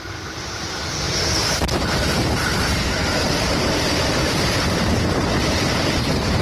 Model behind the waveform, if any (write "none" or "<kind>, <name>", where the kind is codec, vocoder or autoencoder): vocoder, BigVGAN v2